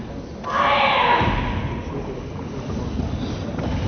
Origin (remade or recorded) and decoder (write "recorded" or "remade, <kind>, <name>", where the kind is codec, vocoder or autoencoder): recorded